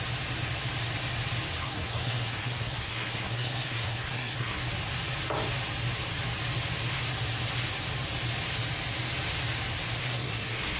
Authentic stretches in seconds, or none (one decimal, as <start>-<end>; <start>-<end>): 0.0-1.6; 4.6-10.0